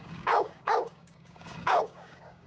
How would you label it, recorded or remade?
remade